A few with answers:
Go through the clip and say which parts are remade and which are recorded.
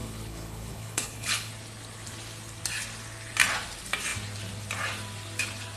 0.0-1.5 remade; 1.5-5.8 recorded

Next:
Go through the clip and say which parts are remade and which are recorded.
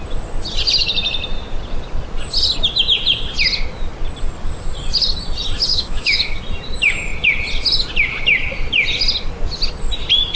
0.0-5.7 recorded; 5.7-6.4 remade; 6.4-10.4 recorded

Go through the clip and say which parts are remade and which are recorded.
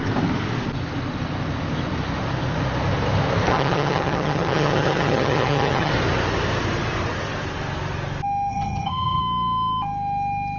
0.0-3.5 recorded; 3.5-5.9 remade; 5.9-8.5 recorded; 8.5-9.2 remade; 9.2-10.6 recorded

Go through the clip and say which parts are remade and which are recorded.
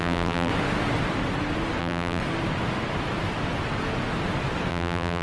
0.0-0.5 remade; 0.5-1.8 recorded; 1.8-2.2 remade; 2.2-4.7 recorded; 4.7-5.2 remade